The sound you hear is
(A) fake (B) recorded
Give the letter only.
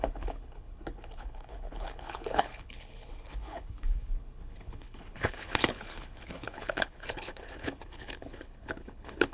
A